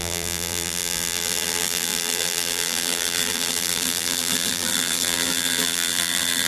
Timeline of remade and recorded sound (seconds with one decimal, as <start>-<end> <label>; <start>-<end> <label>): 0.0-6.5 remade